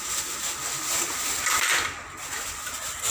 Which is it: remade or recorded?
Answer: recorded